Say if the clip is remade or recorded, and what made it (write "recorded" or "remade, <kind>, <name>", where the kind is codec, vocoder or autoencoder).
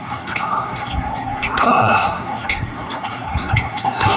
remade, codec, SNAC